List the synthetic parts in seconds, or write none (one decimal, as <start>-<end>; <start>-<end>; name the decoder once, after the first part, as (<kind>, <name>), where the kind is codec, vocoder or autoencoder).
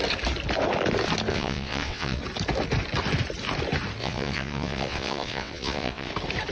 1.3-2.2 (vocoder, WaveNeXt); 4.0-6.1